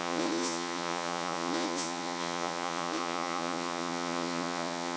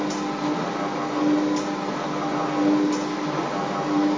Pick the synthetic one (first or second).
first